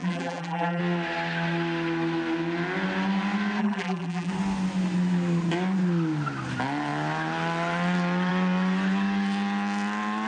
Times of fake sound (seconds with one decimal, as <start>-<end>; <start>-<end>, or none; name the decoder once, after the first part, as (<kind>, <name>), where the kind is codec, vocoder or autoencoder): 0.0-0.8 (vocoder, BigVGAN v2); 3.6-4.3